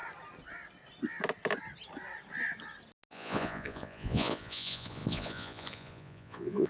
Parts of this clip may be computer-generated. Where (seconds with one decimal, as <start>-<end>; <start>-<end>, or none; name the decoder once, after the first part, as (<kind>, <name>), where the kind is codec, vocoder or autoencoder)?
3.1-6.7 (vocoder, Vocos)